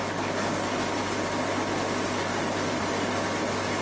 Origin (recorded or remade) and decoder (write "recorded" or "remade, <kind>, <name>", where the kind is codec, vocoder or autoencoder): recorded